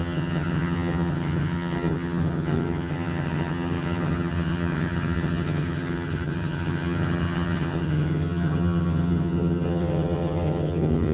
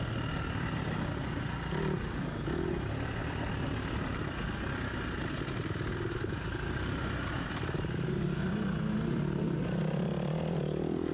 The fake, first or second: first